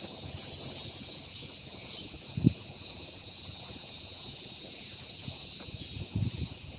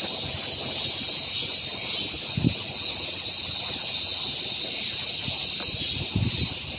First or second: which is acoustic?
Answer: second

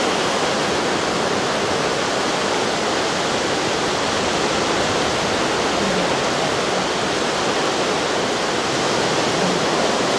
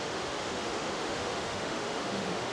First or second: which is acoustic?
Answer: first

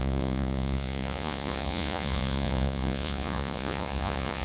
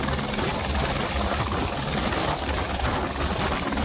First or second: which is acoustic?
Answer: second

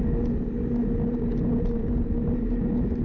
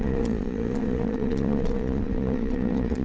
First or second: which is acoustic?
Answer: first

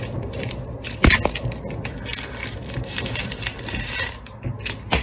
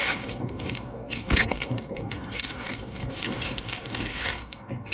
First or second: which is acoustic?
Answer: first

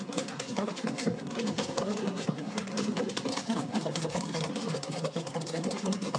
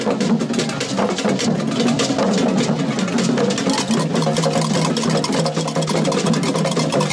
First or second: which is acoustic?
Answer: second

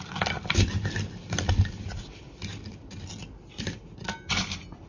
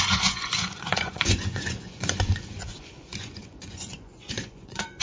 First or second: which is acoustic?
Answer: first